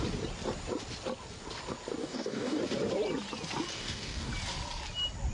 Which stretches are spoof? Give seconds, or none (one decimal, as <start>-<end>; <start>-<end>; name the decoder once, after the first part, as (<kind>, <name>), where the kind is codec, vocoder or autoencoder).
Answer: 2.0-2.6 (codec, DAC); 3.7-4.3